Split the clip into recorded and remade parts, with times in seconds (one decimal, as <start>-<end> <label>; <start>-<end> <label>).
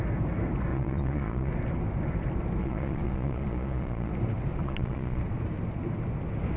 0.0-0.7 recorded; 0.7-1.5 remade; 1.5-2.6 recorded; 2.6-4.1 remade; 4.1-4.6 recorded; 4.6-5.2 remade; 5.2-6.6 recorded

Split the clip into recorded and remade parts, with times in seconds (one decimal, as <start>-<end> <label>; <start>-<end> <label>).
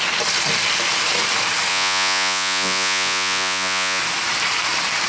0.0-1.7 recorded; 1.7-4.0 remade; 4.0-5.1 recorded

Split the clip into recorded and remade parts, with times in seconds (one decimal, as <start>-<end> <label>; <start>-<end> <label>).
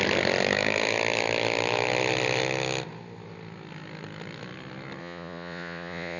0.0-5.0 recorded; 5.0-6.2 remade